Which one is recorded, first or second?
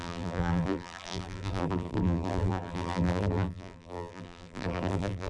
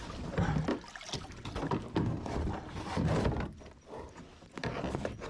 second